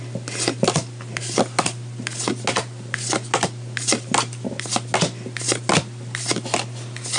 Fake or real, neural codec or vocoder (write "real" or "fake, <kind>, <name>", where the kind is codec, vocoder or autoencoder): real